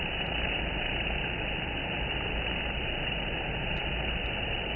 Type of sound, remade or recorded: recorded